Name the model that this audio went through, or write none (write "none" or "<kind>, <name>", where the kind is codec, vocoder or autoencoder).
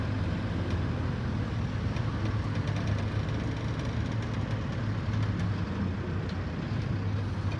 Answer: none